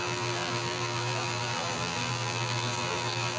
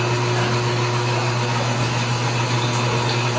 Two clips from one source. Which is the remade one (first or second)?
first